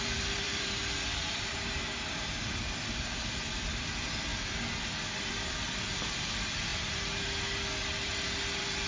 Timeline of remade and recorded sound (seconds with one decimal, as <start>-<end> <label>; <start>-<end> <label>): 0.0-0.8 remade; 0.8-3.3 recorded; 3.3-4.3 remade; 4.3-5.3 recorded; 5.3-6.7 remade; 6.7-7.8 recorded; 7.8-8.9 remade